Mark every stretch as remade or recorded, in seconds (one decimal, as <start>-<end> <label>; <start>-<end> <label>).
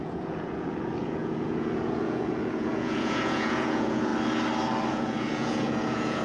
0.0-4.1 remade; 4.1-4.9 recorded; 4.9-6.2 remade